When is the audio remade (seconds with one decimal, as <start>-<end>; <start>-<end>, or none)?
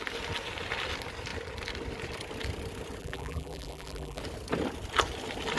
3.0-4.2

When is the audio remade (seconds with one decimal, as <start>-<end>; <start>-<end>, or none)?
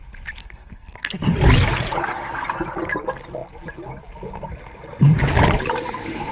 0.4-1.2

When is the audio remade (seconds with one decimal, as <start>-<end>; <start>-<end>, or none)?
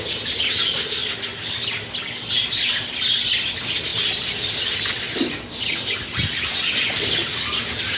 none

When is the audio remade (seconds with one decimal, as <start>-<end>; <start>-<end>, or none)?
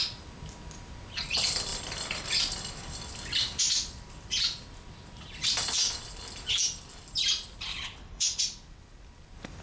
7.7-8.4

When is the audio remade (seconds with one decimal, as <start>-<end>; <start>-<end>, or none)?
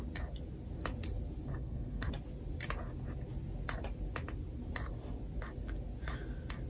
1.5-2.1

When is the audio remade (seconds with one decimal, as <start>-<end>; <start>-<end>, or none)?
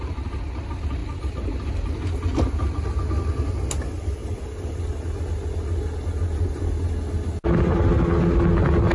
1.0-1.9